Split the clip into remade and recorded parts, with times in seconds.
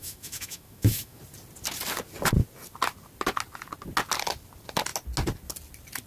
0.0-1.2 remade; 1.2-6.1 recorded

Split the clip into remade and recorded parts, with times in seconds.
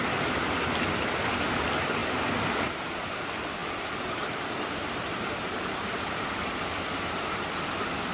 0.0-3.6 recorded; 3.6-6.3 remade; 6.3-8.1 recorded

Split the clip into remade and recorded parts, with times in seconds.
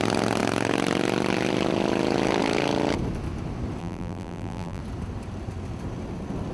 0.0-3.8 recorded; 3.8-4.8 remade; 4.8-6.5 recorded